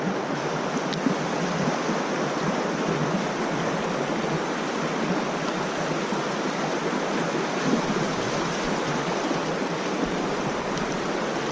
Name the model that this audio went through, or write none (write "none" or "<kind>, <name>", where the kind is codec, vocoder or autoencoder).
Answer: none